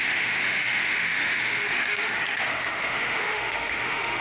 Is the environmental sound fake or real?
fake